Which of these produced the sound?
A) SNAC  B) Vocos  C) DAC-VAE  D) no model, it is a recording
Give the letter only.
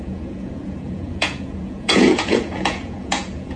B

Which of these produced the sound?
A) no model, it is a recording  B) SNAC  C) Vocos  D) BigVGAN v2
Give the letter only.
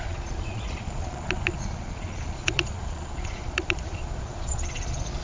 C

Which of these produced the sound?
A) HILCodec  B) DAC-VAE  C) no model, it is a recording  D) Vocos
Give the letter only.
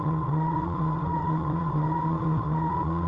D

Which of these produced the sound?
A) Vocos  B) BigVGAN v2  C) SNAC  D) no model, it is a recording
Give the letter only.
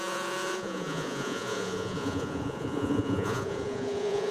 A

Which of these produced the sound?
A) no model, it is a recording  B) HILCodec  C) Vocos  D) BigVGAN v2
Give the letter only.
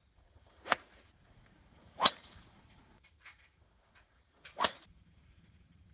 C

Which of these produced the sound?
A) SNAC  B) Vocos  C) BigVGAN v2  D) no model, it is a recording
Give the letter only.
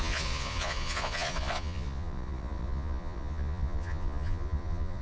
B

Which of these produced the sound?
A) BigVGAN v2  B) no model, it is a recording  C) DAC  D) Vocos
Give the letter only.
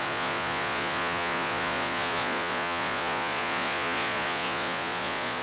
D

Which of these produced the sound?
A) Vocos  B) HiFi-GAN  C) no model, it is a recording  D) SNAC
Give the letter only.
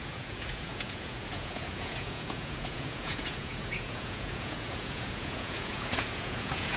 A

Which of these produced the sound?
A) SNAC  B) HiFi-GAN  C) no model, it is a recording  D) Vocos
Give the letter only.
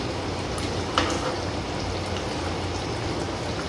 C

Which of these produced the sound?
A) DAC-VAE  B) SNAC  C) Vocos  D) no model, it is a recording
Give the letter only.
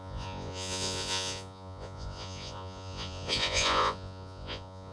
C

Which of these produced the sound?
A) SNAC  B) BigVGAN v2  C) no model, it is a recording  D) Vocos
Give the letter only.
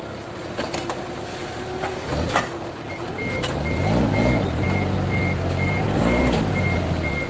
C